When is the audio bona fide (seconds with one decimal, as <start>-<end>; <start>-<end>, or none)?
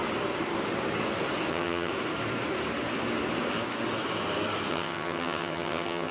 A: 0.0-1.5; 1.9-4.7